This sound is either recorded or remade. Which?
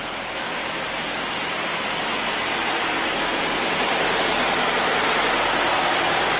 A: recorded